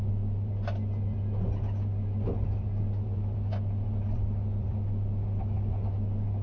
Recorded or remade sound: recorded